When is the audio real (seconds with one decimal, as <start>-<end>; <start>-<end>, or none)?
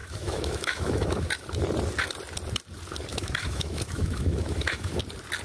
1.3-3.1; 5.0-5.4